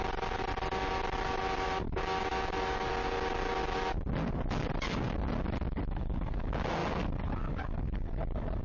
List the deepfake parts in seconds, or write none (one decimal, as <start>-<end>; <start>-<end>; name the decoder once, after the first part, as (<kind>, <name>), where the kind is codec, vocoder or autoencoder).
none